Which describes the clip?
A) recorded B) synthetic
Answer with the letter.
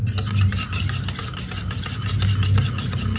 A